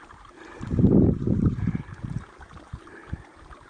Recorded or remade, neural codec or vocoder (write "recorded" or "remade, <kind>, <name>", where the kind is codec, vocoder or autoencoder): recorded